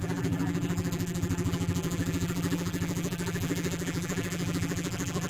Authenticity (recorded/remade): remade